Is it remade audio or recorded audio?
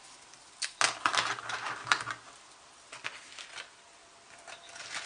recorded